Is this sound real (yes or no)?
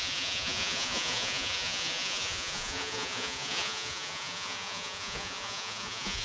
no